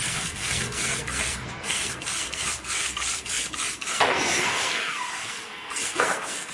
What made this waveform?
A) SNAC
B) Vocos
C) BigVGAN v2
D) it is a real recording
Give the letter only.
A